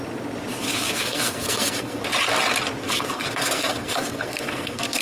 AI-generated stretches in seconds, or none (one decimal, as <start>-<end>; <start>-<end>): 0.5-2.0; 2.8-5.0